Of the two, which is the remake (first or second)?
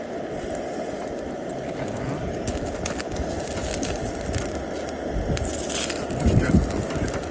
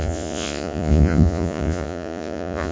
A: second